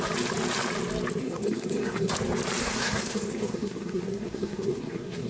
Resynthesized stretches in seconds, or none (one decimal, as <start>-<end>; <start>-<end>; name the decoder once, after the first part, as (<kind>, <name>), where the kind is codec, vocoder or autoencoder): 1.2-2.1 (codec, SNAC); 2.6-5.3